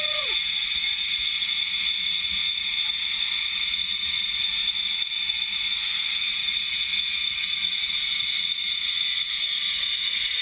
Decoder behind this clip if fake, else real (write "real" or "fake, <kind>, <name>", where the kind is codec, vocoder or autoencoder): fake, vocoder, Vocos